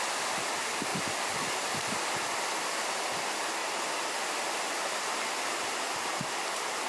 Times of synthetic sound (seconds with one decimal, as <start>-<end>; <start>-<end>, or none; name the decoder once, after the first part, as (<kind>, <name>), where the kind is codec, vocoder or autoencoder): 0.0-0.9 (vocoder, BigVGAN v2); 1.5-3.6; 4.6-6.9